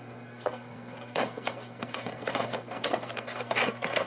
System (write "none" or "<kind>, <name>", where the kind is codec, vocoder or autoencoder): codec, SNAC